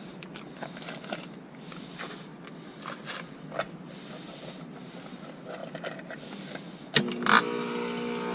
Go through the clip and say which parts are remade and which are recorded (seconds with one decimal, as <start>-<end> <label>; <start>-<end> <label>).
0.0-8.3 recorded